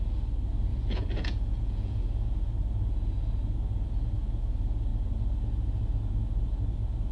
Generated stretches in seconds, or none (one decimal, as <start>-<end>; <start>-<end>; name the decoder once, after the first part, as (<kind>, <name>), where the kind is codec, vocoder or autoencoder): 0.7-2.5 (vocoder, Vocos)